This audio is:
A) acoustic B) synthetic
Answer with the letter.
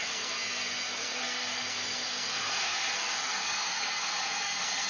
B